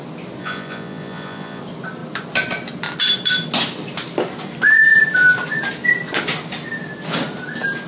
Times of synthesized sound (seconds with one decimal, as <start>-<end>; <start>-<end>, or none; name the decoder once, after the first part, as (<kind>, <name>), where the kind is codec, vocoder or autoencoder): 0.4-1.6 (vocoder, Vocos)